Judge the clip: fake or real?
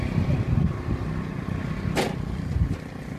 real